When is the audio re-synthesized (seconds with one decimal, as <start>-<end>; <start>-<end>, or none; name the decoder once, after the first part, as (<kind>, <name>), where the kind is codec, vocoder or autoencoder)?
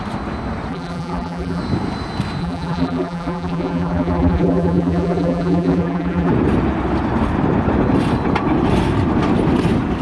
0.7-1.6 (vocoder, BigVGAN v2); 2.4-6.3